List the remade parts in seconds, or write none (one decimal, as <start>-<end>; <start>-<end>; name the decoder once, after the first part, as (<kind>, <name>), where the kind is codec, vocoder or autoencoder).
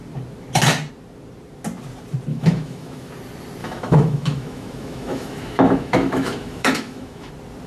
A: 2.3-3.1 (autoencoder, DAC-VAE); 3.6-7.3